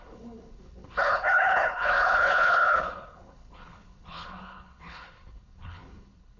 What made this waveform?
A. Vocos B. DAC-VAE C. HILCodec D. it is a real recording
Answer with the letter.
C